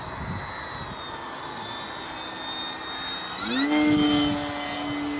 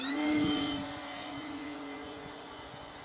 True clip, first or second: first